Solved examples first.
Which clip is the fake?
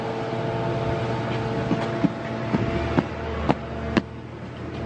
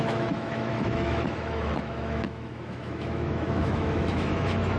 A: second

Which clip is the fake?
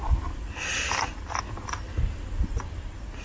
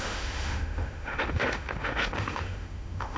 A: second